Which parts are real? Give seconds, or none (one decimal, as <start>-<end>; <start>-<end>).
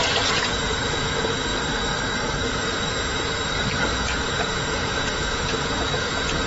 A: 1.5-2.5; 3.3-3.9